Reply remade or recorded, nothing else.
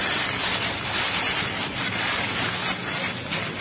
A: recorded